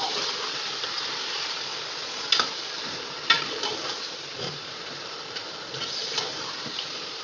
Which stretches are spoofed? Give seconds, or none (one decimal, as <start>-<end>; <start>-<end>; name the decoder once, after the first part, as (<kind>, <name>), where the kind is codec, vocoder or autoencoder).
0.0-1.7 (vocoder, BigVGAN v2); 2.7-7.2